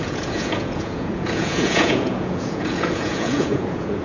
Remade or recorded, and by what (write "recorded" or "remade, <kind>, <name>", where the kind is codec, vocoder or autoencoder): remade, vocoder, Vocos